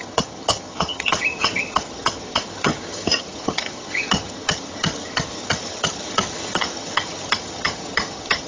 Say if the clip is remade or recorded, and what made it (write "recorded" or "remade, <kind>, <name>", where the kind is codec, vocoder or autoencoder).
remade, vocoder, HiFi-GAN